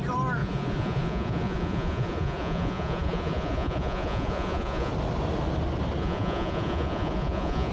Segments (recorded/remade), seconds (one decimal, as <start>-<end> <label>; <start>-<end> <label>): 0.0-0.4 recorded; 0.4-4.9 remade; 4.9-6.0 recorded; 6.0-7.7 remade